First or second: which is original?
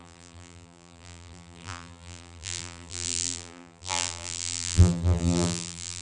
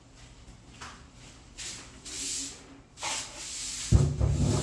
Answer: second